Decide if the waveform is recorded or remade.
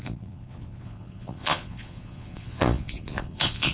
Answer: remade